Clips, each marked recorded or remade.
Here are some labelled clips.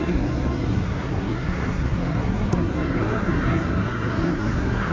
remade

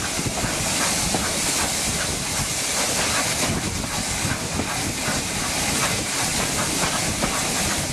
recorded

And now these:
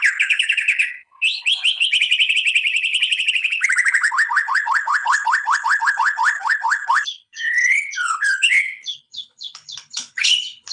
remade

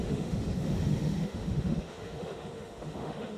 remade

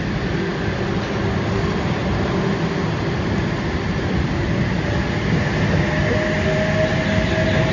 recorded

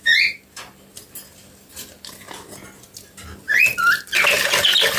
recorded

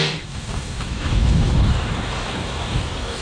remade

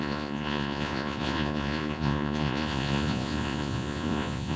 remade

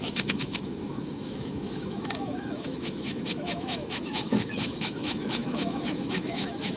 remade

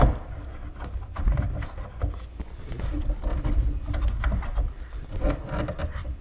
remade